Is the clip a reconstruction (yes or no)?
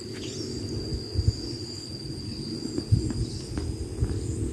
no